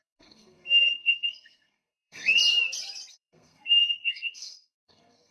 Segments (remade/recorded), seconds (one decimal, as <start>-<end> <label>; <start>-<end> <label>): 0.0-2.4 remade; 2.4-3.1 recorded; 3.1-5.3 remade